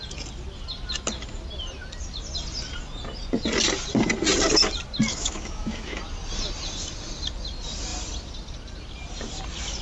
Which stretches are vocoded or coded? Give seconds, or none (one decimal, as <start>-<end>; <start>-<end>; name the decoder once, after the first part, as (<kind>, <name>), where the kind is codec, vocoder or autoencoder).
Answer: 5.1-6.0 (autoencoder, DAC-VAE)